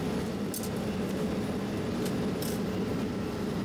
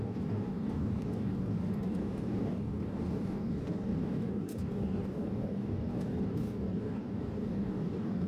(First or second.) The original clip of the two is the first